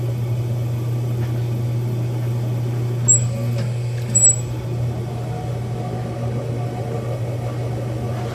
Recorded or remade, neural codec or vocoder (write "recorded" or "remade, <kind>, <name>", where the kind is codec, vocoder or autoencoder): recorded